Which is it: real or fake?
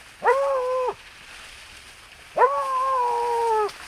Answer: real